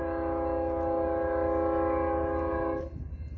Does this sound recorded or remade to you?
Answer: recorded